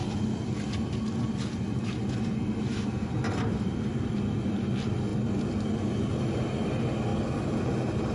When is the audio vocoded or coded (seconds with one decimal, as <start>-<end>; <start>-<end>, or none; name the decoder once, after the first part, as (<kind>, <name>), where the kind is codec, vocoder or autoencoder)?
none